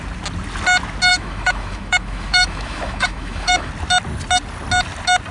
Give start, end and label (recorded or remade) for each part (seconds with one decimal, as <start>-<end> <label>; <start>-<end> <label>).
0.0-1.1 recorded; 1.1-3.7 remade; 3.7-5.3 recorded